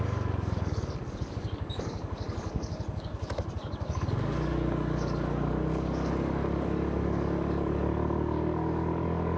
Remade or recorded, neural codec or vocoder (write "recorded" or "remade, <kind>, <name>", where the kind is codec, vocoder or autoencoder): remade, codec, DAC